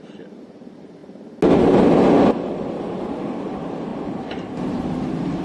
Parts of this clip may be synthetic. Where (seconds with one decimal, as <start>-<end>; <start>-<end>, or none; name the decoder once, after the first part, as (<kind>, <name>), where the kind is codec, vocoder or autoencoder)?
none